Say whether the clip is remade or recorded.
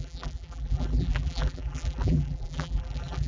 remade